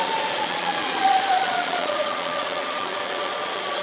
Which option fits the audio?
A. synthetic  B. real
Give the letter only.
A